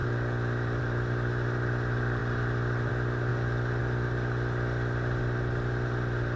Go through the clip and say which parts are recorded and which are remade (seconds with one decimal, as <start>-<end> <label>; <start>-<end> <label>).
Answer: 0.0-6.4 recorded